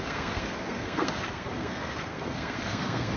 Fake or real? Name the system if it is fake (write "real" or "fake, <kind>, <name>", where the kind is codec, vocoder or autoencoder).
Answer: fake, codec, SNAC